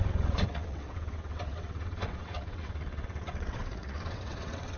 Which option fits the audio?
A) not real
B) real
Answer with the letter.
A